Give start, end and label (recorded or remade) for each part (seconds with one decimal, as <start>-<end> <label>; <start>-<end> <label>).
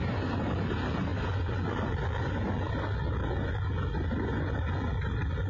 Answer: 0.0-5.5 recorded